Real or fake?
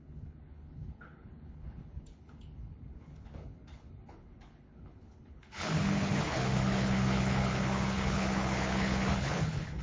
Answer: fake